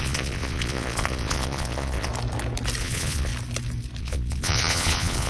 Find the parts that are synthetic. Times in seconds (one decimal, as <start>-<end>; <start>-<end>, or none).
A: 0.0-2.1; 2.8-3.3; 4.0-5.3